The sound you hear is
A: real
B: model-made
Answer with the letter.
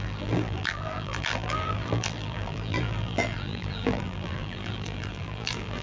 B